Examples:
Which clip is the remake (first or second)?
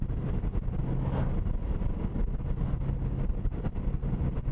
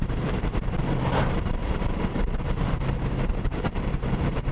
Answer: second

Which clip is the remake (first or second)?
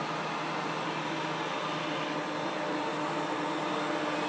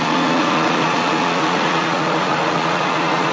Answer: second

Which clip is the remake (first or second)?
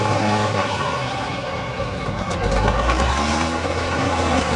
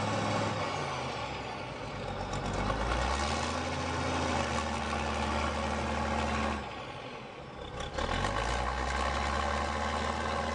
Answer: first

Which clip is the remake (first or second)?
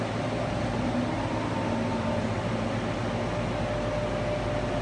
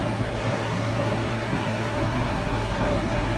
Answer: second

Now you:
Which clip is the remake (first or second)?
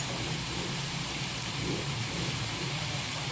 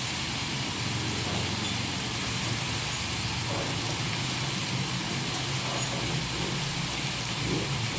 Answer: first